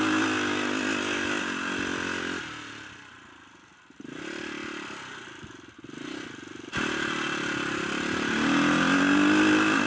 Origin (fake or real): real